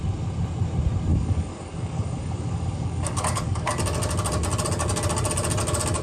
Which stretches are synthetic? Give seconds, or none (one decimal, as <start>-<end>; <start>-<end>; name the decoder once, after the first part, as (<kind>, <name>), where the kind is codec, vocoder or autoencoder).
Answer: 1.1-3.7 (codec, DAC)